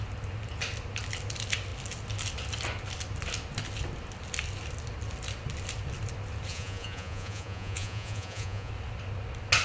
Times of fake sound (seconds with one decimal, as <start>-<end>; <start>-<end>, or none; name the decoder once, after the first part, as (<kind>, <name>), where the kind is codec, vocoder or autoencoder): 6.5-8.7 (vocoder, Vocos)

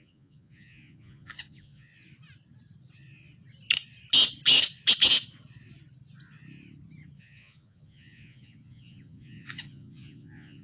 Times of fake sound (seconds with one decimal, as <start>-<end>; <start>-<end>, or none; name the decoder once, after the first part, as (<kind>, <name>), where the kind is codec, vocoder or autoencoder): 0.0-1.9 (vocoder, Vocos); 7.2-10.6

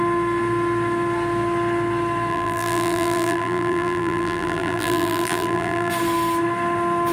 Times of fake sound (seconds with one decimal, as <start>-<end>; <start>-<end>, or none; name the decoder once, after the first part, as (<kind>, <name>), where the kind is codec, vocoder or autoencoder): 2.3-5.9 (vocoder, BigVGAN v2)

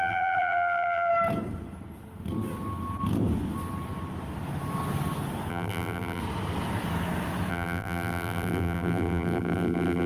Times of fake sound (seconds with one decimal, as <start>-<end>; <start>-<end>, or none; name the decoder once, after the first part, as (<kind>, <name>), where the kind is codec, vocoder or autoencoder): 0.0-1.1 (vocoder, BigVGAN v2); 5.5-6.2; 7.5-10.1

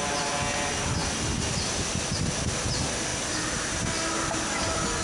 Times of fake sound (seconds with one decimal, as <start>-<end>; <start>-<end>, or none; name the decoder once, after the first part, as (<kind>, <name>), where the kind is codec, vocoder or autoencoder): none

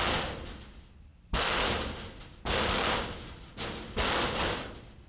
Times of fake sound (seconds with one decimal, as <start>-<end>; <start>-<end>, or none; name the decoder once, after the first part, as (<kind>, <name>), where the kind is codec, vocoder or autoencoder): none